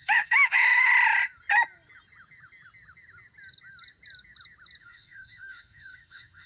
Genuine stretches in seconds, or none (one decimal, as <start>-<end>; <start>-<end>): 0.9-4.8